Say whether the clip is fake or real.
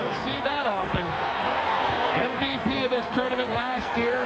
fake